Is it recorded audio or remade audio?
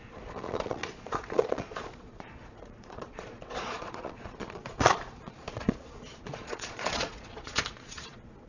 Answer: remade